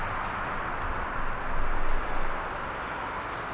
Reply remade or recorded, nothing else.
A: recorded